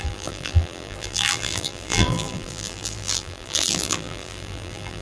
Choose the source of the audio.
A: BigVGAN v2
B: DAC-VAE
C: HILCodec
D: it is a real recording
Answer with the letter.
A